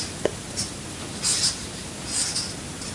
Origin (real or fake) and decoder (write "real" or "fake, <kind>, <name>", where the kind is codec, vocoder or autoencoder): real